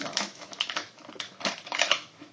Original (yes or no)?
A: no